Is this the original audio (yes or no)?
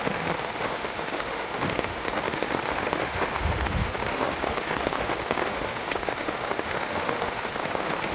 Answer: no